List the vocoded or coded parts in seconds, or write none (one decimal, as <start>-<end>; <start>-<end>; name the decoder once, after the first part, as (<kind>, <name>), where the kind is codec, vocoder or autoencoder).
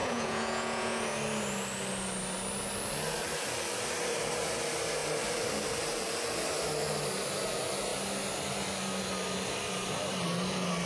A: 0.0-1.0 (vocoder, Vocos)